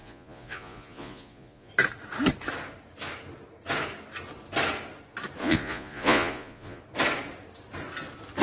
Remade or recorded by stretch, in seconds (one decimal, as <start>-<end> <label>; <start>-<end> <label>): 0.0-1.7 remade; 1.7-5.4 recorded; 5.4-6.8 remade; 6.8-8.4 recorded